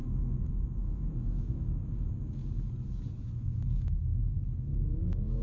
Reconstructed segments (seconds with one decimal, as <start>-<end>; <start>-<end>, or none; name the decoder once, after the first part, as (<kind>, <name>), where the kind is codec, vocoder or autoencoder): 0.0-2.4 (autoencoder, DAC-VAE); 3.2-5.4